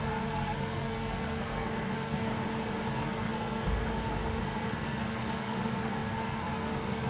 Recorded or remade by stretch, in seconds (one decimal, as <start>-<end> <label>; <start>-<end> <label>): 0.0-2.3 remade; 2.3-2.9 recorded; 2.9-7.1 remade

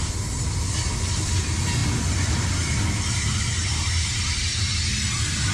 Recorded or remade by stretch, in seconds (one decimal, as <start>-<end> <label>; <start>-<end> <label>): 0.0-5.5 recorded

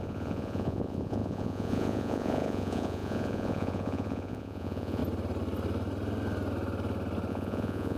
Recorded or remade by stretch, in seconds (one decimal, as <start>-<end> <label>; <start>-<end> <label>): 0.0-5.0 remade; 5.0-7.3 recorded; 7.3-8.0 remade

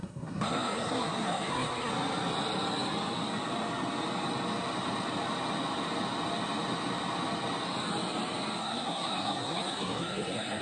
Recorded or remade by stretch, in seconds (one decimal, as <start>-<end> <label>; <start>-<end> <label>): 0.0-1.9 remade; 1.9-8.6 recorded; 8.6-10.6 remade

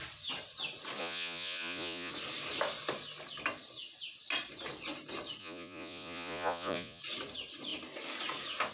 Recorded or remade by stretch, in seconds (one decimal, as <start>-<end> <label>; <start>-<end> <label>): 0.0-1.0 recorded; 1.0-2.1 remade; 2.1-5.4 recorded; 5.4-7.0 remade; 7.0-8.7 recorded